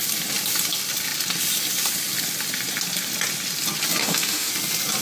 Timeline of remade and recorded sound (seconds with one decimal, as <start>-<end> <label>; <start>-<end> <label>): 0.0-4.0 recorded; 4.0-4.5 remade; 4.5-5.0 recorded